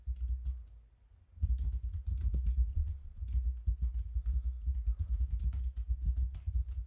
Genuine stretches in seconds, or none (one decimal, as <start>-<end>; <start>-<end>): 0.0-2.7; 3.2-6.9